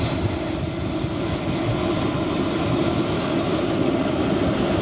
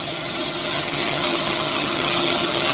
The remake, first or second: second